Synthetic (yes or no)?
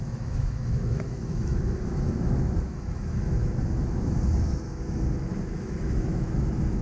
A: yes